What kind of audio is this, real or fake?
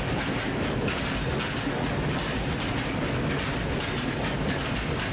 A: real